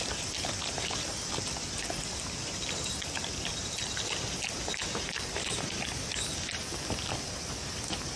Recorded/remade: recorded